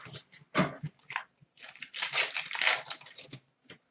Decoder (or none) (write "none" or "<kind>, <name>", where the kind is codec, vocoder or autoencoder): none